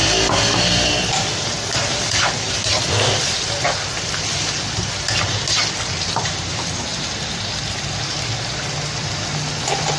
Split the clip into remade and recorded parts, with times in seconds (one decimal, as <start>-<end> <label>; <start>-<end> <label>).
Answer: 0.0-10.0 recorded

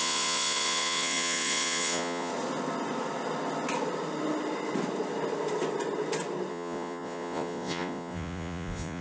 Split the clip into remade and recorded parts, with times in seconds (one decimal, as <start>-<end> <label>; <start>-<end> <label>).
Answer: 0.0-2.3 remade; 2.3-6.5 recorded; 6.5-9.0 remade